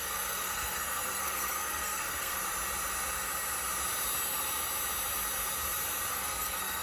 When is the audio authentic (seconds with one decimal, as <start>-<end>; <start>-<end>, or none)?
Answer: 2.4-6.1